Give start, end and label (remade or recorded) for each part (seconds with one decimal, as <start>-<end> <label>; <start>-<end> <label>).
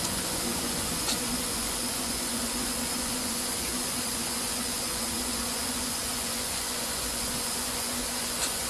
0.0-8.7 remade